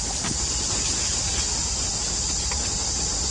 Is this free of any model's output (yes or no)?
yes